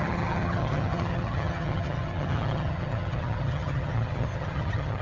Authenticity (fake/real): fake